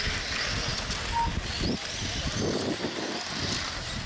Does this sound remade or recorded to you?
recorded